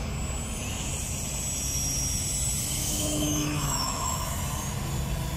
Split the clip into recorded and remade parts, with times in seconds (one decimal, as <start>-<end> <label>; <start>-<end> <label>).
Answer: 0.0-2.8 recorded; 2.8-4.4 remade; 4.4-5.4 recorded